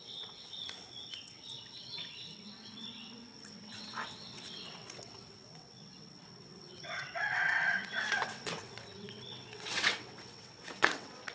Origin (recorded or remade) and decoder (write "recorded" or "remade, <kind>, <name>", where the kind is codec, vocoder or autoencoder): remade, vocoder, WaveNeXt